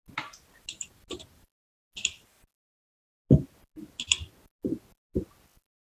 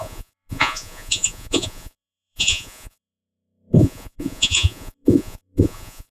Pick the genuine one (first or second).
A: first